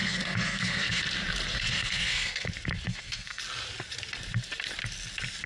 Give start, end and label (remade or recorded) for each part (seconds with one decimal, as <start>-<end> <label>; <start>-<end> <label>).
0.0-1.0 remade; 1.0-1.5 recorded; 1.5-2.5 remade; 2.5-2.9 recorded; 2.9-3.4 remade; 3.4-5.5 recorded